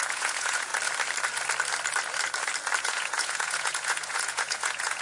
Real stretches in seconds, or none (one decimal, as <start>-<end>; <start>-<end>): 0.7-2.8